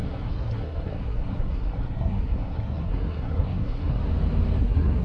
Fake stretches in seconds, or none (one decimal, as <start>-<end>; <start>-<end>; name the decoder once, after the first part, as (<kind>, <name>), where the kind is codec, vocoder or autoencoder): 0.0-4.0 (codec, SNAC); 4.6-5.0